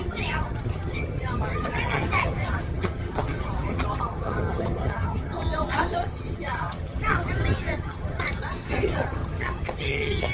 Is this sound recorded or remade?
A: remade